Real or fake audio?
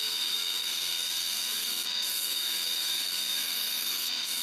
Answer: fake